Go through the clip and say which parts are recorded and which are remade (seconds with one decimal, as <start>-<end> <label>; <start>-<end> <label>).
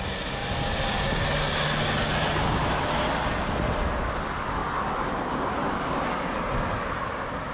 0.0-7.5 recorded